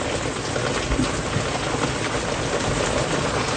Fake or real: real